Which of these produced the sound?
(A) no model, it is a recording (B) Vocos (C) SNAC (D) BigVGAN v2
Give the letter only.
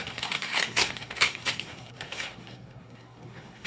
C